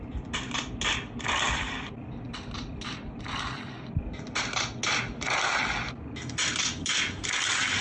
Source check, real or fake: real